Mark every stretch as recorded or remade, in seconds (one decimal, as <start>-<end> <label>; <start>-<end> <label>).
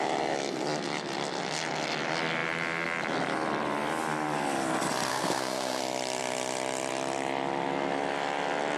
0.0-5.1 recorded; 5.1-5.8 remade; 5.8-8.8 recorded